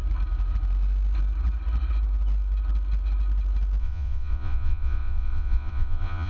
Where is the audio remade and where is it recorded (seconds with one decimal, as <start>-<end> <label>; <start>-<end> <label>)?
0.0-3.8 recorded; 3.8-6.3 remade